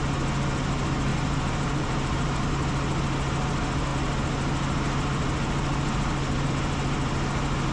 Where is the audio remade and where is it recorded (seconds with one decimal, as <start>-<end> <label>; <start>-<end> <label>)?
0.0-1.1 recorded; 1.1-2.5 remade; 2.5-7.7 recorded